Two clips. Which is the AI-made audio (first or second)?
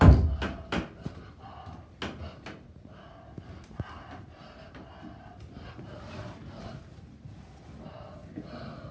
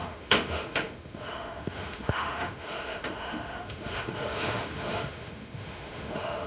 second